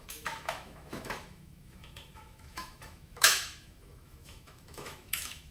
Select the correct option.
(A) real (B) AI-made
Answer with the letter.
B